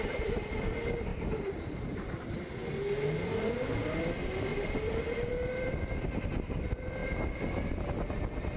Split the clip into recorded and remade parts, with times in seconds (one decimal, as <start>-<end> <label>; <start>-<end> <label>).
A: 0.0-1.1 recorded; 1.1-2.0 remade; 2.0-4.5 recorded; 4.5-5.3 remade; 5.3-8.6 recorded